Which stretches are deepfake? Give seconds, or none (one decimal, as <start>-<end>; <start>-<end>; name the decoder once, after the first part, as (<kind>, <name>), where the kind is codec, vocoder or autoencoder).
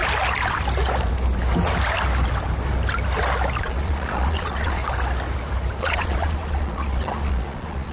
3.6-4.8 (vocoder, Vocos); 5.8-7.9